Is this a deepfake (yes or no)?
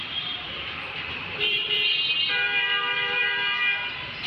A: yes